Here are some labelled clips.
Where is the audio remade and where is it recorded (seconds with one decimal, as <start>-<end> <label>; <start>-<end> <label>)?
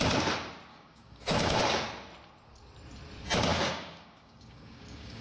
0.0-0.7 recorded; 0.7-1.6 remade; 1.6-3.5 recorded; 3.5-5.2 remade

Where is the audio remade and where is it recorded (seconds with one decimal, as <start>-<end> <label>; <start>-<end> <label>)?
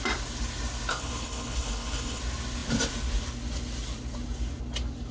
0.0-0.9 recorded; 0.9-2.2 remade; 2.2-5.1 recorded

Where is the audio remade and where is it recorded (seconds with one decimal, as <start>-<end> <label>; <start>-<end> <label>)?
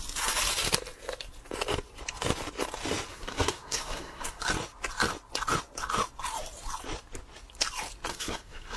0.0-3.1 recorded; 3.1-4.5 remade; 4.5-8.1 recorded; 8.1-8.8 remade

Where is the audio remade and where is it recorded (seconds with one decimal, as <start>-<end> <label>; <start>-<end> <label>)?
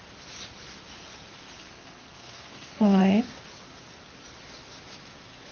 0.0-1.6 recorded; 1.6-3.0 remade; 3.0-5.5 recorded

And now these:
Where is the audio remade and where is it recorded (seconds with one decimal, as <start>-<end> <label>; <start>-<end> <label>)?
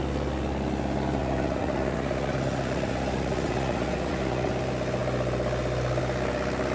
0.0-1.2 recorded; 1.2-4.5 remade; 4.5-6.7 recorded